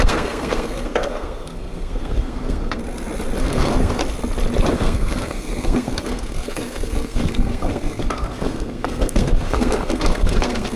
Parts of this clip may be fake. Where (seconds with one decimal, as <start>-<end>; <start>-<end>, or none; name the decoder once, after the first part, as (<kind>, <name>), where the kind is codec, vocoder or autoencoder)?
0.0-2.8 (codec, SNAC); 3.4-4.0; 4.7-10.8